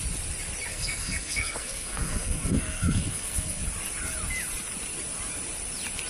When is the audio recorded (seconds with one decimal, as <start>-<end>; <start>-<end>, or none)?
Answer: 0.0-0.7; 3.6-6.1